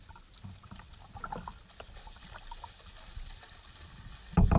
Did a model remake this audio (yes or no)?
no